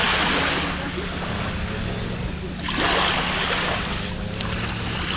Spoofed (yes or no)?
no